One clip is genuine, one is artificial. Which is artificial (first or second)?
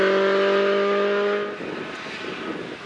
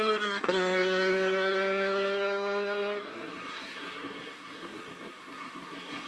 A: second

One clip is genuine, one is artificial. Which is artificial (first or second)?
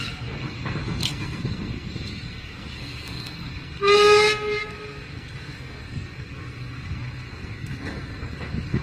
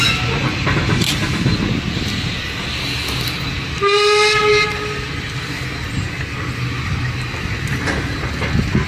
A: first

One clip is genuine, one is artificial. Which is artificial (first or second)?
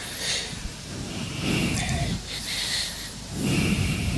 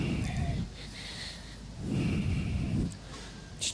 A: first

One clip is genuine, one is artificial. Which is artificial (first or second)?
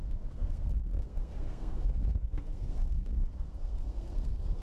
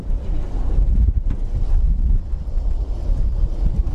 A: first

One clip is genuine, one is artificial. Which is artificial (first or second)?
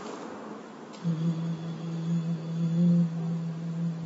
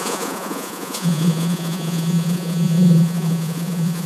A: second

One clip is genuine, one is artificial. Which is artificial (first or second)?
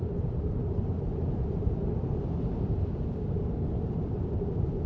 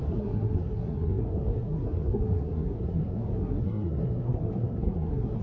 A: second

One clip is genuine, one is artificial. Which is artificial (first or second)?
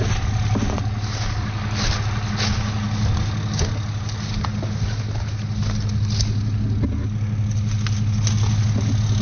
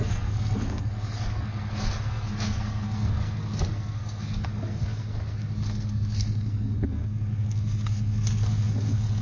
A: second